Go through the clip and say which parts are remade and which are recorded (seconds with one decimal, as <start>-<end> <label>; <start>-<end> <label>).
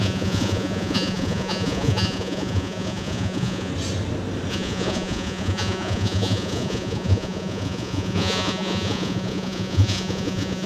0.0-3.7 remade; 3.7-4.5 recorded; 4.5-10.7 remade